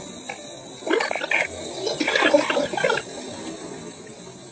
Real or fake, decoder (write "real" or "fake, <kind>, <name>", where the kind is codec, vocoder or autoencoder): real